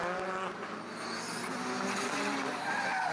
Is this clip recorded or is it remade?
recorded